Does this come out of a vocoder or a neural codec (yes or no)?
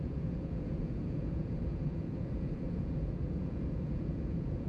yes